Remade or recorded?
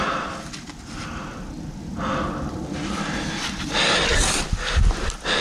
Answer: recorded